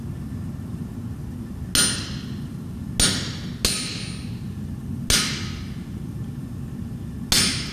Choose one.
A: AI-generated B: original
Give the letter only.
B